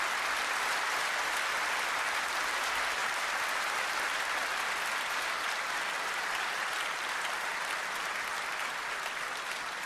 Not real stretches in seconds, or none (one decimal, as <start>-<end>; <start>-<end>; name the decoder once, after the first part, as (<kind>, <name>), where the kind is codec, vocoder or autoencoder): 3.0-3.7 (vocoder, BigVGAN v2)